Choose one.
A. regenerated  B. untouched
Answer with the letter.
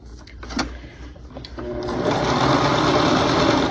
A